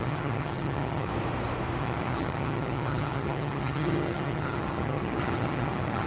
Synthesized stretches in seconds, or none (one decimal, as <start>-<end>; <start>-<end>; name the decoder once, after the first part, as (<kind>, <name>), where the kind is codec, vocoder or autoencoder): 0.0-1.1 (vocoder, HiFi-GAN); 1.8-6.1

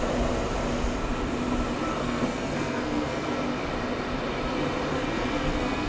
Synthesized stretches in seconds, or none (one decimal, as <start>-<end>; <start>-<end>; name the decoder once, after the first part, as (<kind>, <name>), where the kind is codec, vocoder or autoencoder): 1.9-3.4 (codec, SNAC); 4.9-5.9